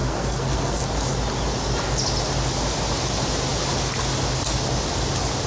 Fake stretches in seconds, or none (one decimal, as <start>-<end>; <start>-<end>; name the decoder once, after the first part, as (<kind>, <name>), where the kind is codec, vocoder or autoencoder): 0.0-0.8 (codec, SNAC)